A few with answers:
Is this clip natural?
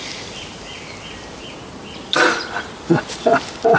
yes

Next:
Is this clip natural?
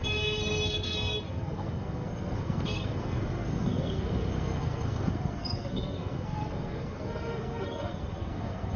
no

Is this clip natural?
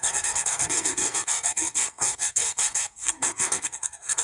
no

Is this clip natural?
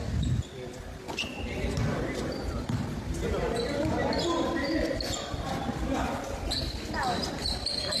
yes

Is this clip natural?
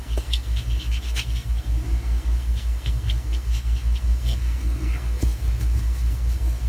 no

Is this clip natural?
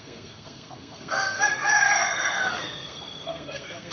no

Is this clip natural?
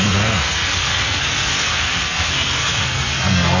no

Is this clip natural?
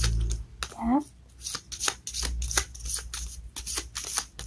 yes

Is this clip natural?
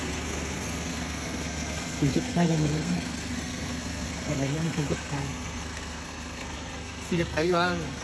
no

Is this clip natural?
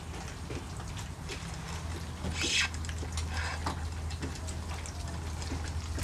yes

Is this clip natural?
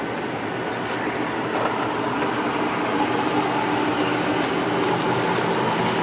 yes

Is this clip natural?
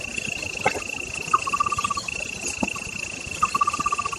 yes